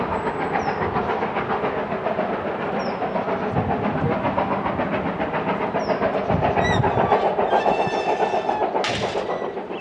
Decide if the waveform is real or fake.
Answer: real